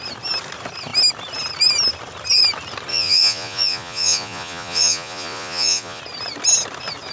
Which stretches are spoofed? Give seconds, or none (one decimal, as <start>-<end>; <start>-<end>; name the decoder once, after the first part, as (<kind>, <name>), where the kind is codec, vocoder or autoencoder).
2.9-6.0 (vocoder, Vocos)